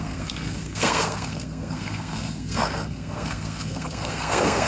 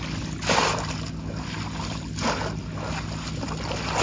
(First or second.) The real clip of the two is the second